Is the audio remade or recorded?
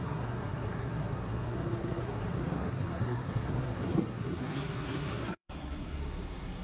remade